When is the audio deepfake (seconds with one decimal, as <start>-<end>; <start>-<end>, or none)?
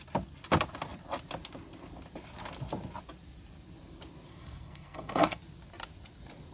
4.3-5.4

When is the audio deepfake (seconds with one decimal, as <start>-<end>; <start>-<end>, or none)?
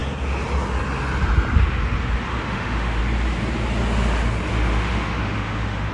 2.3-3.0; 4.5-5.9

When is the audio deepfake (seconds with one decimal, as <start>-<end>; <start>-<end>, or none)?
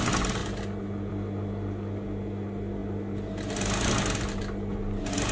none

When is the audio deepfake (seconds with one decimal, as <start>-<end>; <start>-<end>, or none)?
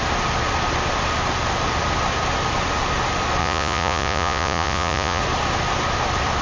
3.4-5.2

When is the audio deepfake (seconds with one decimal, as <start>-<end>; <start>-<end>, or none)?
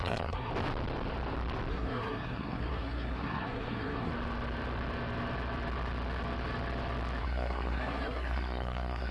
0.0-0.5; 1.7-4.1; 7.2-9.1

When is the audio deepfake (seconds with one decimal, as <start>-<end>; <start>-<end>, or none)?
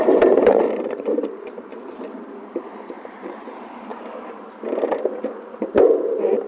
0.0-1.7; 2.6-3.9; 5.5-6.5